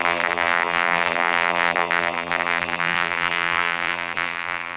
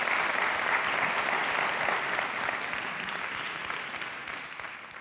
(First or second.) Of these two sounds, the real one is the second